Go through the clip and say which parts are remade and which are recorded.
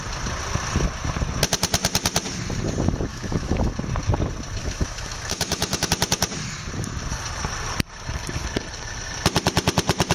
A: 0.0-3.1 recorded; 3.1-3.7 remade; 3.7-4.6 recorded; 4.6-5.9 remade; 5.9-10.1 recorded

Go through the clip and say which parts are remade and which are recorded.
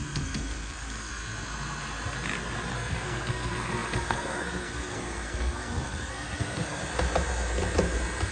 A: 0.0-1.1 remade; 1.1-2.7 recorded; 2.7-6.8 remade; 6.8-8.3 recorded